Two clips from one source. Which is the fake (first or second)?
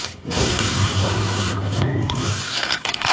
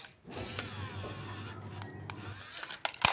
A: first